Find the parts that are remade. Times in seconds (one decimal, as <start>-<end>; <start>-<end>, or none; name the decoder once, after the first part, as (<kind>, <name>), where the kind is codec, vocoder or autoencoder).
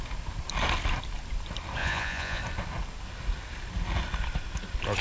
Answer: 1.8-2.4 (vocoder, Vocos)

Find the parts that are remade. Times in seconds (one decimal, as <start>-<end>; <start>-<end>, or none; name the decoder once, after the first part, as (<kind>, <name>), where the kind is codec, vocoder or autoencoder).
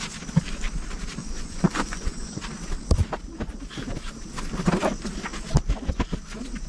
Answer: 1.2-2.4 (vocoder, Vocos)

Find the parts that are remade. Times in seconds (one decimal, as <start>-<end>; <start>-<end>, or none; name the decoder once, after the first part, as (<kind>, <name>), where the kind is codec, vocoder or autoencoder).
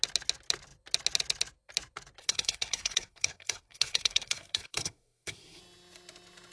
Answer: 2.2-5.6 (codec, SNAC)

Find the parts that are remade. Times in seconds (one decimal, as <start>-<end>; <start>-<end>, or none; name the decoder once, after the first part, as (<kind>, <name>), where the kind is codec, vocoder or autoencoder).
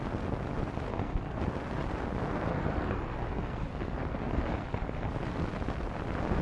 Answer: 0.9-1.4 (codec, SNAC); 2.5-5.1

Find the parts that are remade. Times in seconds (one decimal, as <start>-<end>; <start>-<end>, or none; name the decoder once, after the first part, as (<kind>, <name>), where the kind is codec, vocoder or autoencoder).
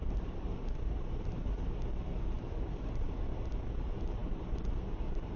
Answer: 0.0-0.5 (vocoder, BigVGAN v2); 3.7-5.4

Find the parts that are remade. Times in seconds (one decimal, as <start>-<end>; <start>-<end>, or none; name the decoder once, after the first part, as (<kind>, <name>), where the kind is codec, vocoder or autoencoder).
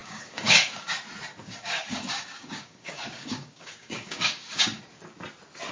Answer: 0.0-0.9 (codec, DAC); 1.4-4.8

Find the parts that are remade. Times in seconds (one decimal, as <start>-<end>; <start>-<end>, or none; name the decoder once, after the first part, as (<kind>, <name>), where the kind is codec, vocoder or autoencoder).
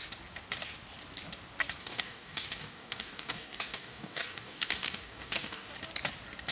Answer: 1.8-5.7 (codec, DAC)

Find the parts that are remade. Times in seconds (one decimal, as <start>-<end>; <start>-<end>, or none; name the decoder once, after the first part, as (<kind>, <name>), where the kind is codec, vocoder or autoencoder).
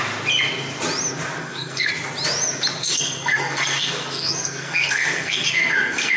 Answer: 1.4-1.9 (codec, SNAC); 2.8-6.2